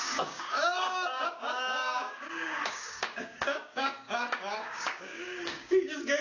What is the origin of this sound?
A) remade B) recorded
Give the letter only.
A